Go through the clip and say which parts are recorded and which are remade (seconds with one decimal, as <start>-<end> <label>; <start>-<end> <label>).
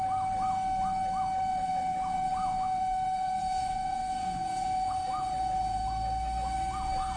0.0-1.5 recorded; 1.5-5.8 remade; 5.8-7.2 recorded